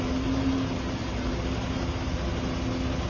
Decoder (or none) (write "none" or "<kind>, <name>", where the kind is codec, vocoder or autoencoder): none